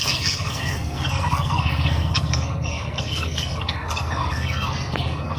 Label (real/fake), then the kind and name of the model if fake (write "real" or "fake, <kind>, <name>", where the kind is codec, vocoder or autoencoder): fake, codec, SNAC